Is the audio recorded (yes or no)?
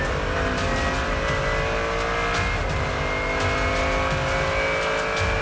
yes